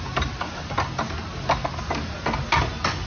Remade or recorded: recorded